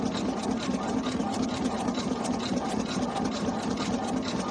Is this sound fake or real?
real